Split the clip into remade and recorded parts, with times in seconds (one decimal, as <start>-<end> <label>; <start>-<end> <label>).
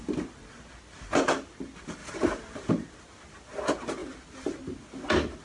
0.0-5.4 recorded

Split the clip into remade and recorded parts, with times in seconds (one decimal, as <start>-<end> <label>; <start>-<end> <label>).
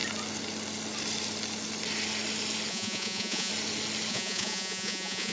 0.0-2.7 recorded; 2.7-3.5 remade; 3.5-4.1 recorded; 4.1-5.3 remade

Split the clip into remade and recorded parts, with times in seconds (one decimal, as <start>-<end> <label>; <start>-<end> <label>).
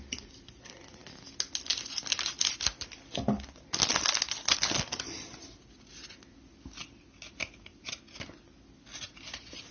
0.0-9.7 recorded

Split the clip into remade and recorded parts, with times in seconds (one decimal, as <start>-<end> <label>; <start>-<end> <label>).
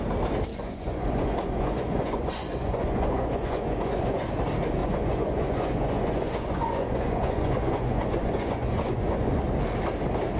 0.0-0.5 recorded; 0.5-4.3 remade; 4.3-4.8 recorded; 4.8-9.4 remade; 9.4-10.4 recorded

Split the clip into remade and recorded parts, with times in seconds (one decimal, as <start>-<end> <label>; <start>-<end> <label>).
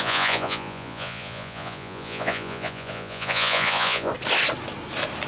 0.0-4.1 remade; 4.1-5.3 recorded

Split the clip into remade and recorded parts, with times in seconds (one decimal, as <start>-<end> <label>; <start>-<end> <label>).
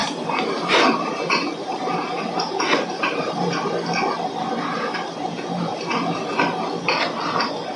0.0-4.3 remade; 4.3-7.8 recorded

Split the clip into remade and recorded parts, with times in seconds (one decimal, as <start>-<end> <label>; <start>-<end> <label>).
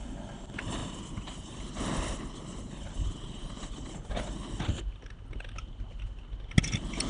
0.0-7.1 recorded